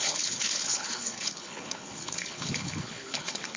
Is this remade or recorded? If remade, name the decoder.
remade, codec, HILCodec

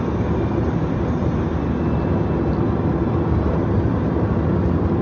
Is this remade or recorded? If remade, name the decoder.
recorded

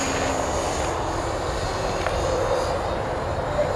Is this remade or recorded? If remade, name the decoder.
recorded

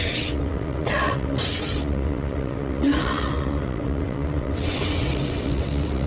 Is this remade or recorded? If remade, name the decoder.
remade, vocoder, WaveNeXt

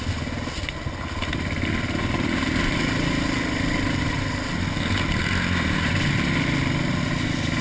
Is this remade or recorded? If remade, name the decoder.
recorded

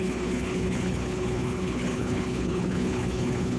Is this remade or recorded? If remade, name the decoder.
remade, codec, HILCodec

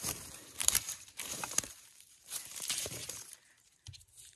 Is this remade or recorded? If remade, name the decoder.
remade, vocoder, BigVGAN v2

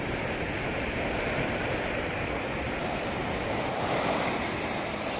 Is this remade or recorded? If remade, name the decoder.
recorded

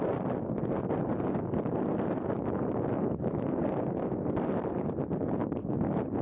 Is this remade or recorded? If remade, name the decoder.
recorded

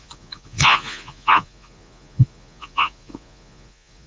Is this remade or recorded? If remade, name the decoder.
remade, vocoder, Vocos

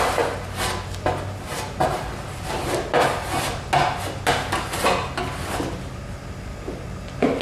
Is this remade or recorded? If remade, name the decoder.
recorded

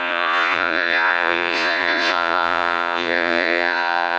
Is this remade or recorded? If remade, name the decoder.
remade, vocoder, Vocos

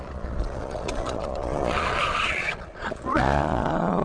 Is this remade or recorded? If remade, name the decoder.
remade, vocoder, Vocos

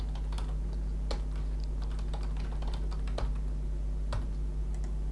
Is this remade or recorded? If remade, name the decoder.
recorded